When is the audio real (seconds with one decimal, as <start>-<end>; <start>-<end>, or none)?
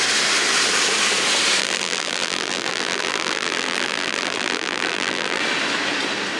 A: 0.0-1.6; 5.4-6.4